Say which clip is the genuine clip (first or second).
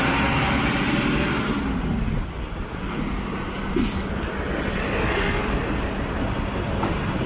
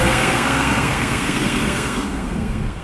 first